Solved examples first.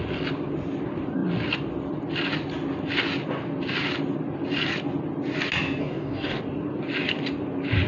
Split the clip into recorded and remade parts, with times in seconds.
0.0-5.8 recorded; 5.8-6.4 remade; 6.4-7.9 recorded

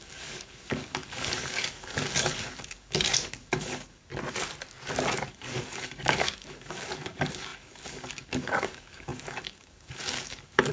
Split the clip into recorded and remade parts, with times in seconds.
0.0-4.1 remade; 4.1-5.3 recorded; 5.3-10.7 remade

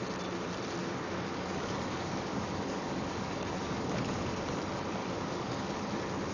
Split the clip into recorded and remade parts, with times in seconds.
0.0-0.8 recorded; 0.8-4.6 remade; 4.6-5.0 recorded; 5.0-5.7 remade; 5.7-6.3 recorded

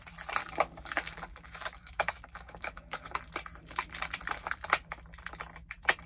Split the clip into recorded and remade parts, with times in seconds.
0.0-0.4 recorded; 0.4-3.2 remade; 3.2-6.1 recorded

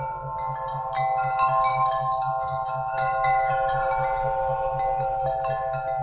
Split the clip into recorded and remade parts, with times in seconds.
0.0-1.7 recorded; 1.7-3.5 remade; 3.5-6.0 recorded

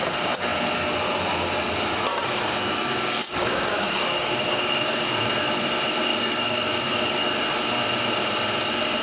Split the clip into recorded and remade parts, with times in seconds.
0.0-2.1 recorded; 2.1-5.3 remade; 5.3-6.1 recorded; 6.1-7.4 remade; 7.4-9.0 recorded